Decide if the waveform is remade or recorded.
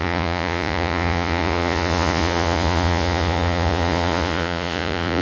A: remade